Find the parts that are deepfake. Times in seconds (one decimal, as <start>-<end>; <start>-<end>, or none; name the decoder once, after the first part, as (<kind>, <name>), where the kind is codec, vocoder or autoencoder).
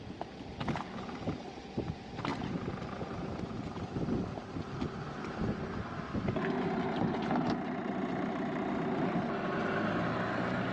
2.3-3.6 (vocoder, BigVGAN v2); 4.4-5.0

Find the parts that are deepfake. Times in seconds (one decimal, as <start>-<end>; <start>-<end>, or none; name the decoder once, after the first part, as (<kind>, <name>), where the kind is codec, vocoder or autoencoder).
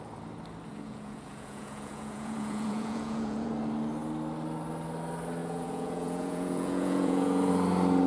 0.7-3.5 (vocoder, Vocos); 5.4-7.5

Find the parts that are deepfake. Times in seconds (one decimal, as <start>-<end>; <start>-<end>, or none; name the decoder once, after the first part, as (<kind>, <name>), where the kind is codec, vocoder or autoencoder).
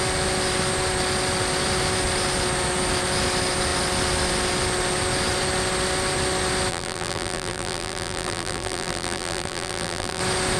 6.7-10.2 (vocoder, BigVGAN v2)